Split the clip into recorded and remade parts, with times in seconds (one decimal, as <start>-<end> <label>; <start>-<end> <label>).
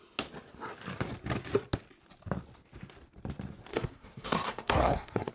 0.0-3.7 recorded; 3.7-5.3 remade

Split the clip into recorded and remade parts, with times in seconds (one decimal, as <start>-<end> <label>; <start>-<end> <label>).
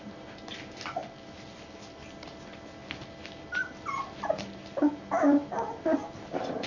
0.0-6.7 recorded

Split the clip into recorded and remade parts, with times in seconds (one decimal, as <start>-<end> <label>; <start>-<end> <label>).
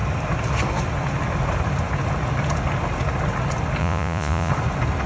0.0-3.8 recorded; 3.8-4.5 remade; 4.5-5.1 recorded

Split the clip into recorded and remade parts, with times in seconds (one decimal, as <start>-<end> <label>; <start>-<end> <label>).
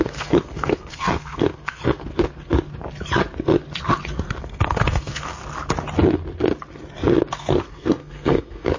0.0-1.8 remade; 1.8-4.4 recorded; 4.4-5.4 remade; 5.4-7.3 recorded; 7.3-8.8 remade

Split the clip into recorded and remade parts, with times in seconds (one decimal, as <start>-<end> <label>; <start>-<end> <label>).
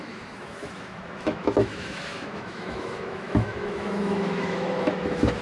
0.0-5.4 remade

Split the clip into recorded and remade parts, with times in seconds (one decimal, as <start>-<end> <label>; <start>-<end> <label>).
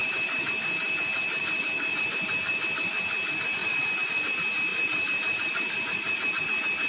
0.0-1.9 recorded; 1.9-2.5 remade; 2.5-3.6 recorded; 3.6-4.3 remade; 4.3-4.7 recorded; 4.7-6.4 remade; 6.4-6.9 recorded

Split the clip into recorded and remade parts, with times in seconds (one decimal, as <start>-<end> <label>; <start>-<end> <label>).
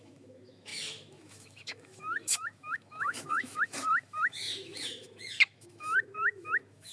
0.0-6.9 remade